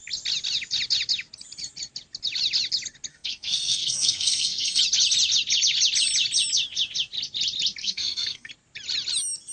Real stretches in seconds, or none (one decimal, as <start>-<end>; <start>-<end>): 0.0-3.1; 4.8-7.8; 8.5-9.5